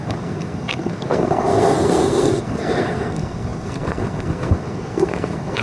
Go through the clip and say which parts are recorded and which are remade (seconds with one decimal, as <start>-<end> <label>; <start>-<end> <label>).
0.0-5.6 remade

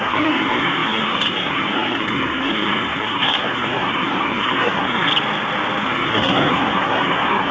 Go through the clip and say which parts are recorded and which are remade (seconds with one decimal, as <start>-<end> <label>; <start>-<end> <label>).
0.0-5.1 remade; 5.1-5.8 recorded; 5.8-7.5 remade

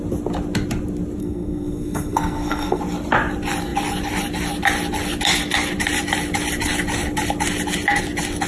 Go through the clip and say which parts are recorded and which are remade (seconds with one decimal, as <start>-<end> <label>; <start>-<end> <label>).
0.0-1.2 recorded; 1.2-2.8 remade; 2.8-8.5 recorded

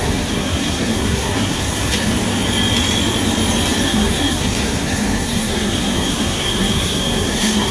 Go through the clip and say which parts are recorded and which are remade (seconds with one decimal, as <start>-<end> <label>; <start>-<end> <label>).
0.0-2.1 remade; 2.1-3.8 recorded; 3.8-7.7 remade

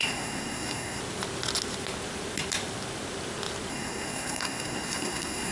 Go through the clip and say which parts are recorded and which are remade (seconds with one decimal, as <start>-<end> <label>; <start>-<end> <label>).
0.0-1.0 remade; 1.0-3.7 recorded; 3.7-5.5 remade

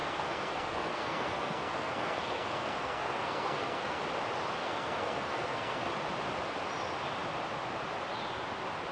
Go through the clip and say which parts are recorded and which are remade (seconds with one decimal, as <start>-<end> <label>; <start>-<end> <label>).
0.0-4.0 remade; 4.0-4.6 recorded; 4.6-5.9 remade; 5.9-8.9 recorded